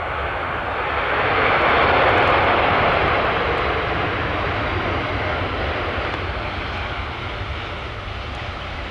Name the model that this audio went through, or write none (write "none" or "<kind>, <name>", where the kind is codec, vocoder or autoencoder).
none